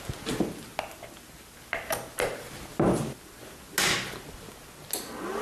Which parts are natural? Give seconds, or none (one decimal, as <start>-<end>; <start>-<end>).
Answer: 0.0-5.4